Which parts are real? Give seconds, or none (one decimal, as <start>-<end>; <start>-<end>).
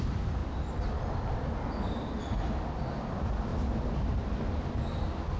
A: 0.0-5.4